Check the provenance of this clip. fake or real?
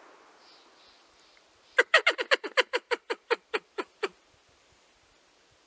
real